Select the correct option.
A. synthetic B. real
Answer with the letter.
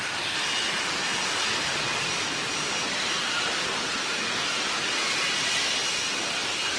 B